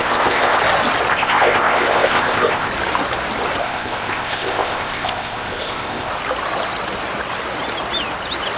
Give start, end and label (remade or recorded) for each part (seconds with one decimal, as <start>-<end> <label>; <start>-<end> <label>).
0.0-0.6 remade; 0.6-1.1 recorded; 1.1-2.7 remade; 2.7-3.6 recorded; 3.6-6.1 remade; 6.1-8.6 recorded